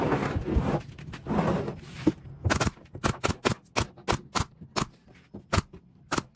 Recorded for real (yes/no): yes